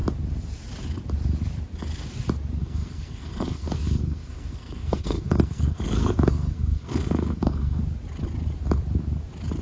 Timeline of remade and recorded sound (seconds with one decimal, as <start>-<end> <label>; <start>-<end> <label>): 0.0-2.6 recorded; 2.6-7.8 remade; 7.8-9.6 recorded